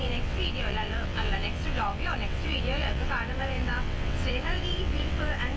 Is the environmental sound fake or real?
fake